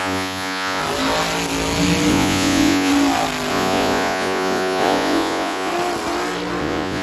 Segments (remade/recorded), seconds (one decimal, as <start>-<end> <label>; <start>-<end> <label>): 0.0-0.8 remade; 0.8-2.1 recorded; 2.1-2.9 remade; 2.9-3.5 recorded; 3.5-5.7 remade; 5.7-6.6 recorded; 6.6-7.0 remade